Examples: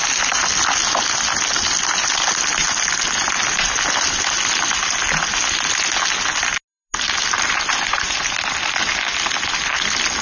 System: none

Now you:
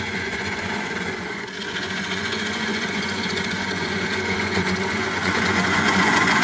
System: vocoder, Vocos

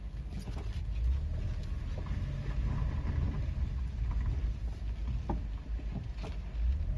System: none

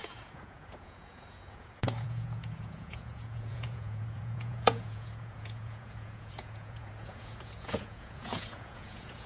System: vocoder, Vocos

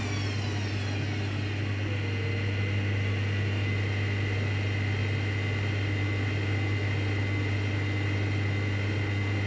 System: none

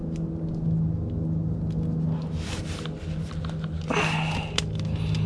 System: none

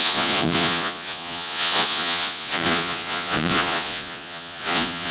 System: vocoder, Vocos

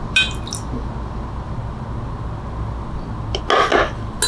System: none